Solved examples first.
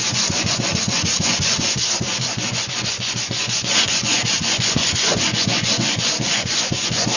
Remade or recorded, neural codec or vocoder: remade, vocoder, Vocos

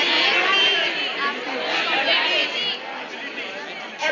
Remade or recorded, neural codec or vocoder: recorded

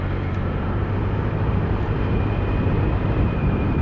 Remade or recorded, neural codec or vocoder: remade, vocoder, BigVGAN v2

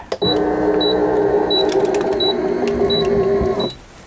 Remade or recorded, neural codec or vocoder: recorded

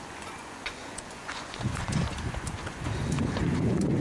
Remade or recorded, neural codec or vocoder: remade, vocoder, Vocos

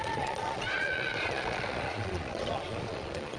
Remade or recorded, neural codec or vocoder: remade, vocoder, Vocos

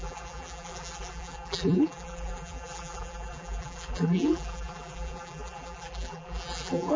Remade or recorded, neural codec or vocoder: remade, vocoder, BigVGAN v2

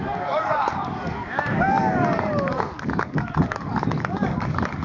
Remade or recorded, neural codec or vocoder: remade, codec, DAC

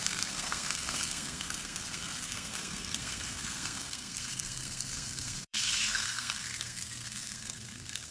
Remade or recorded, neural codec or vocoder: remade, codec, SNAC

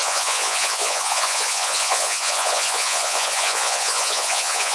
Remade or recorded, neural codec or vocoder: remade, vocoder, Vocos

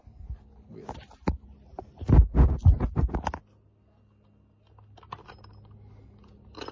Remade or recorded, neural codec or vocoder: recorded